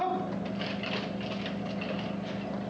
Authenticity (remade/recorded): recorded